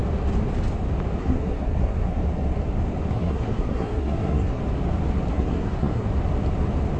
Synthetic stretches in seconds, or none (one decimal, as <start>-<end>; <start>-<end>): 1.2-2.2; 3.1-4.6; 5.3-6.1